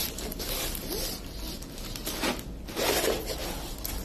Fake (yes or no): no